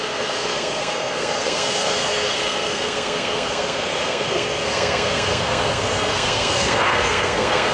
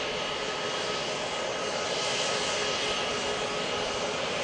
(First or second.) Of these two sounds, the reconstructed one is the first